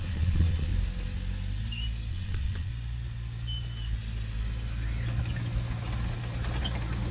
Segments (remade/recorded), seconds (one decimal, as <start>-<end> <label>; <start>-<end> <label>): 0.0-0.7 remade; 0.7-2.1 recorded; 2.1-2.7 remade; 2.7-7.1 recorded